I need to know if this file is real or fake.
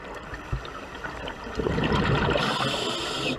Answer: real